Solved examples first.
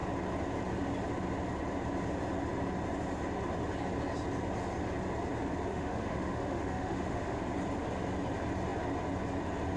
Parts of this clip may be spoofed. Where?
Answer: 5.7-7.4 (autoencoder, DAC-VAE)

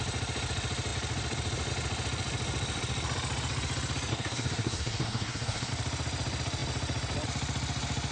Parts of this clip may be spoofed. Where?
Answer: 4.1-5.7 (codec, SNAC)

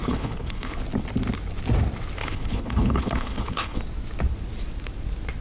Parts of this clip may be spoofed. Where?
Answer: 0.0-0.8 (codec, HILCodec); 2.2-3.8

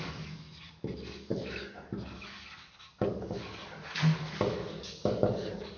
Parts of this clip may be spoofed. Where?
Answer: 0.0-5.8 (codec, DAC)

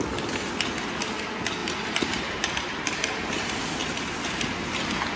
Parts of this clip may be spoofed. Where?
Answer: 1.6-2.5 (vocoder, BigVGAN v2)

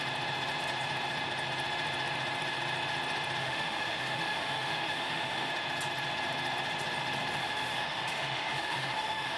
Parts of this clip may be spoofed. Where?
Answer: 3.4-5.5 (autoencoder, DAC-VAE); 7.4-9.4

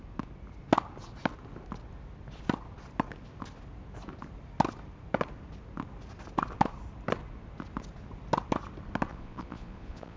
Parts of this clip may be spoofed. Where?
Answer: 9.1-10.2 (vocoder, Vocos)

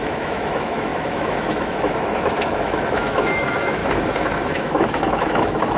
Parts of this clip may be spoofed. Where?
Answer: 0.0-3.8 (autoencoder, DAC-VAE); 4.5-5.8